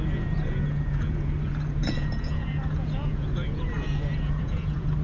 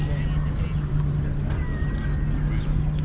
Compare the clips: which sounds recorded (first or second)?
second